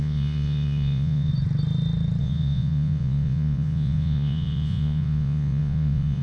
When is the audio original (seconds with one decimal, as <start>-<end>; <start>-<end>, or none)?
1.3-2.2